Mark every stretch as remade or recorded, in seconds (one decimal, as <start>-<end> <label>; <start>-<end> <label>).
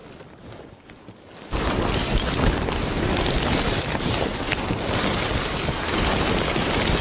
0.0-7.0 recorded